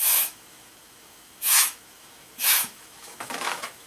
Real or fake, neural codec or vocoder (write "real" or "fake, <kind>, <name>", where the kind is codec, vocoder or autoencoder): fake, autoencoder, DAC-VAE